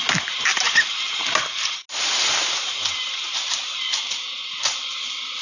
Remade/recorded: recorded